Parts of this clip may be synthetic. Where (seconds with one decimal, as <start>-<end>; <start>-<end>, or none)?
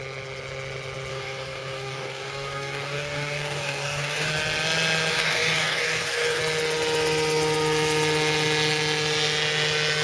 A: 1.1-4.3; 5.1-6.4